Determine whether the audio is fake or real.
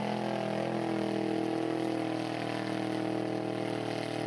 real